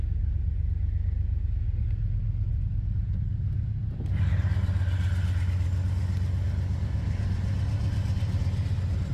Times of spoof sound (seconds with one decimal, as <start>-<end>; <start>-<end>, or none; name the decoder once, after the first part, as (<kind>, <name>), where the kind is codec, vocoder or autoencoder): none